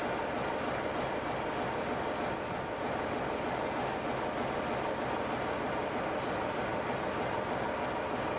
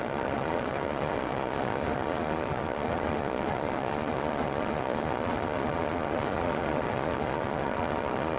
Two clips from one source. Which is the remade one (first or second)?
second